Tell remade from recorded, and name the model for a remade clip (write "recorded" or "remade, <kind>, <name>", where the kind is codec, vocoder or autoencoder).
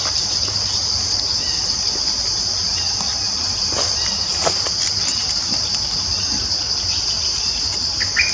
recorded